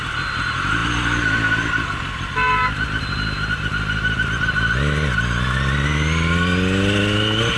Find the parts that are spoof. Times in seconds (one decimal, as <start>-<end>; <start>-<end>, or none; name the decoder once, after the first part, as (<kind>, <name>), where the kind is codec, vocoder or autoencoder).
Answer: none